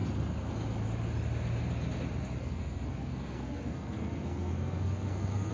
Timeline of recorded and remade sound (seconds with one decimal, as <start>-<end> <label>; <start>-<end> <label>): 0.0-2.4 recorded; 2.4-5.5 remade